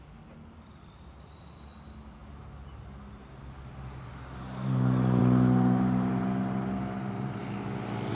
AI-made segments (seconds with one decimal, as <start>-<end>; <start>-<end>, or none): none